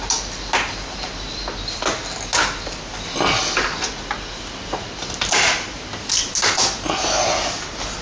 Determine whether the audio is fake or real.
real